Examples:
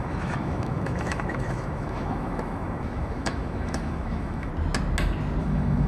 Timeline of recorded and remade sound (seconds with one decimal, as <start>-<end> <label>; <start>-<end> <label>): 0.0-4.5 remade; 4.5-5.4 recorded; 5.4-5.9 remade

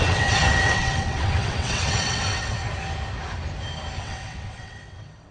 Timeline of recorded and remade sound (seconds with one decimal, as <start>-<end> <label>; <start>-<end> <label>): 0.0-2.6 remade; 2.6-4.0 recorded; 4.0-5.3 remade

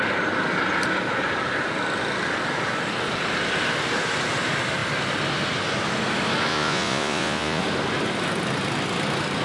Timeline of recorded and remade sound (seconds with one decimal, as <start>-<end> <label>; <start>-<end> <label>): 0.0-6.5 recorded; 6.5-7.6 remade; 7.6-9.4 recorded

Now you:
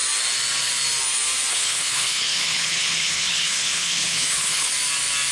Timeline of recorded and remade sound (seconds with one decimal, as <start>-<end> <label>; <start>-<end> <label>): 0.0-1.5 recorded; 1.5-4.7 remade; 4.7-5.3 recorded

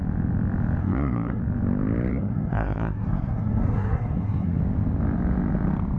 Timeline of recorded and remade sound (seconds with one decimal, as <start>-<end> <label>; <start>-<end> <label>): 0.0-0.8 recorded; 0.8-1.4 remade; 1.4-2.1 recorded; 2.1-4.6 remade; 4.6-6.0 recorded

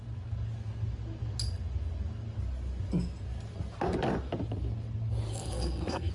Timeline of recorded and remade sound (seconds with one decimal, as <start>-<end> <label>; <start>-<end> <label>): 0.0-5.3 recorded; 5.3-6.1 remade

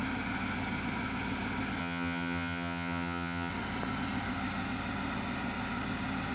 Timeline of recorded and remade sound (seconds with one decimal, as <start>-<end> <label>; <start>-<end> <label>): 0.0-1.8 recorded; 1.8-3.5 remade; 3.5-6.3 recorded

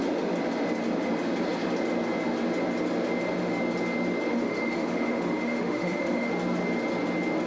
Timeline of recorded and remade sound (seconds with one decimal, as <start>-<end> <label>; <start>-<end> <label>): 0.0-4.3 recorded; 4.3-6.3 remade; 6.3-7.5 recorded